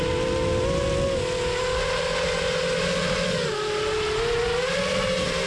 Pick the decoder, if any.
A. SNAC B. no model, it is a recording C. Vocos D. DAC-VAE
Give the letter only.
B